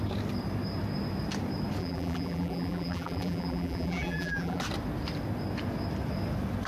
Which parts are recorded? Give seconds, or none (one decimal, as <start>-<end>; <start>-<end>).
0.0-1.8; 4.6-6.7

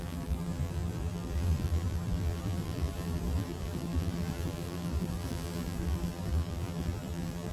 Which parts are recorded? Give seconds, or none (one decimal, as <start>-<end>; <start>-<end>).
none